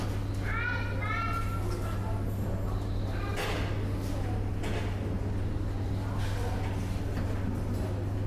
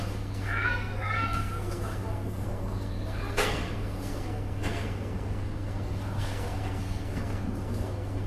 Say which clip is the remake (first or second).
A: second